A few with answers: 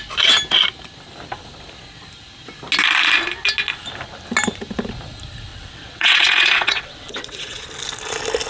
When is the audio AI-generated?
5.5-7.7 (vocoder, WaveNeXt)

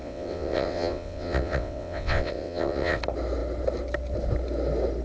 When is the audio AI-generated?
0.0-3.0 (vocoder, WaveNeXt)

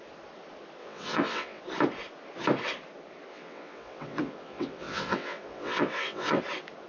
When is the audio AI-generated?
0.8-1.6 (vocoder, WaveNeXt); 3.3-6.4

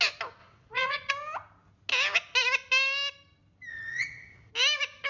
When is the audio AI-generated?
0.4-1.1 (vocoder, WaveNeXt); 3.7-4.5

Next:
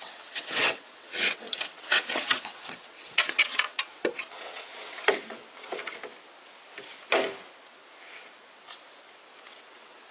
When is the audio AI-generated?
0.0-5.8 (vocoder, WaveNeXt); 9.4-10.1

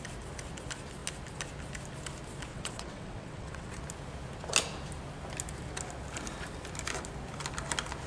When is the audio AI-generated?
2.5-3.8 (vocoder, WaveNeXt)

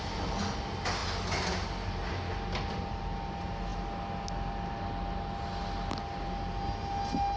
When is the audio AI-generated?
none